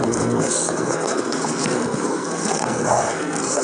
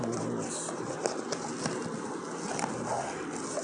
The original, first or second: second